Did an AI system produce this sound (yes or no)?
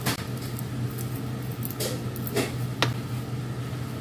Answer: no